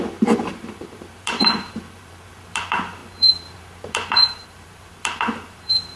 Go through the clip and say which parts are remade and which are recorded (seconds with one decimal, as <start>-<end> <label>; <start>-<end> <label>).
0.0-6.0 remade